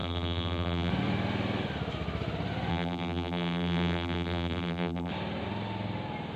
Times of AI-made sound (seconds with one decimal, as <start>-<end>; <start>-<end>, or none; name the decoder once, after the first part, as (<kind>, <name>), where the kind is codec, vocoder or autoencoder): 0.0-0.9 (vocoder, BigVGAN v2); 2.7-5.1